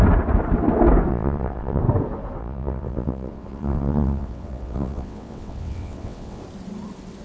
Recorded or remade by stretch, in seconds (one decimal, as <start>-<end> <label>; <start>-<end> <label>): 0.0-1.1 recorded; 1.1-1.8 remade; 1.8-2.4 recorded; 2.4-6.4 remade; 6.4-7.2 recorded